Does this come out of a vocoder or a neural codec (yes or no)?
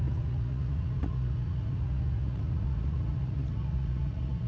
yes